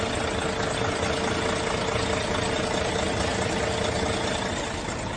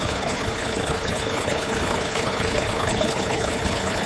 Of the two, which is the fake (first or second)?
second